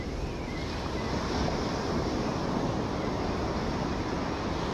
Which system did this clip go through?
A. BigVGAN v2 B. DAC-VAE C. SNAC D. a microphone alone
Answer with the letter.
D